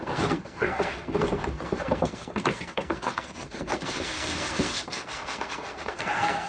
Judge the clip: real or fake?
fake